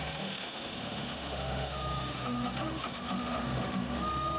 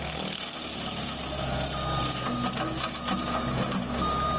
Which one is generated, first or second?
first